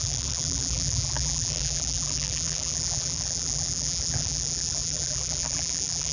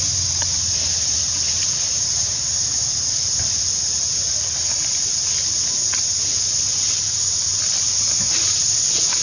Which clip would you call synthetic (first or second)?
first